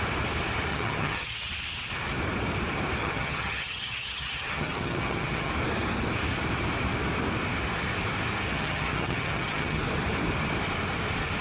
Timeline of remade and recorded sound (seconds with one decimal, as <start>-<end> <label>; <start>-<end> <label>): 0.0-0.7 recorded; 0.7-1.5 remade; 1.5-3.0 recorded; 3.0-5.5 remade; 5.5-8.5 recorded; 8.5-9.8 remade; 9.8-11.4 recorded